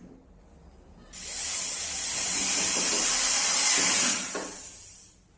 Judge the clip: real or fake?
real